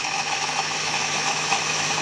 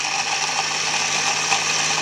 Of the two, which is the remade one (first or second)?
first